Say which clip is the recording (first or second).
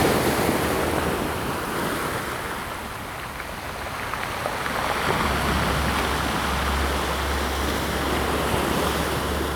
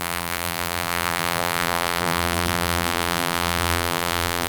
first